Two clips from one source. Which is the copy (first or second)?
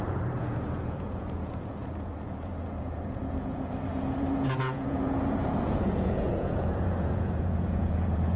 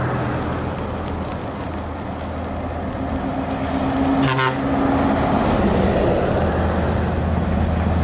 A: first